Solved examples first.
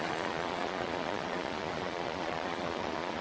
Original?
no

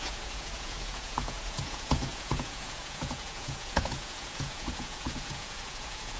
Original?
no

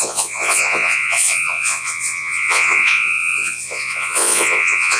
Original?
no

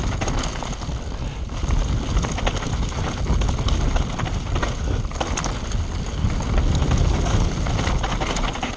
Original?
yes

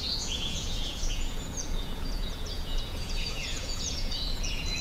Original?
no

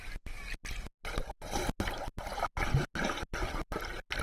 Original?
yes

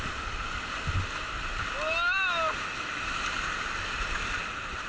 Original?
yes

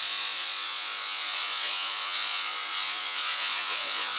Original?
no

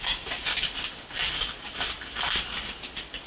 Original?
yes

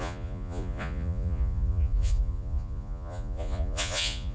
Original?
no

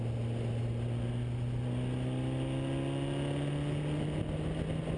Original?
yes